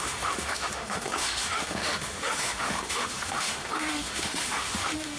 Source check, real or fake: fake